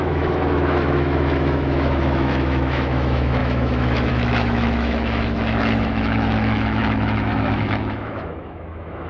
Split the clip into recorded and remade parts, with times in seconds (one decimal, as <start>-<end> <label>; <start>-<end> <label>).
0.0-9.1 remade